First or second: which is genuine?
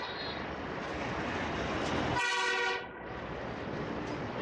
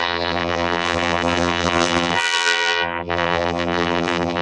first